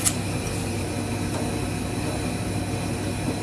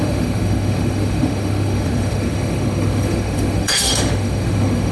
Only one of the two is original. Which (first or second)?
first